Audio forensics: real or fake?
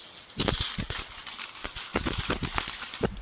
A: real